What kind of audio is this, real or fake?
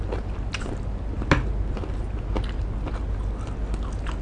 real